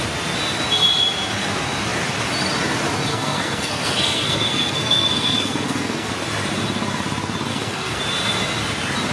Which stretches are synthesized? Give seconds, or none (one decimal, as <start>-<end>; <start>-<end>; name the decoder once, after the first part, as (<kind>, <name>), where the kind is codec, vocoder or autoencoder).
3.1-6.1 (codec, SNAC); 7.5-8.0